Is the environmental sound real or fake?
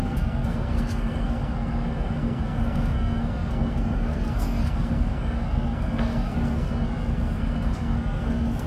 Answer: fake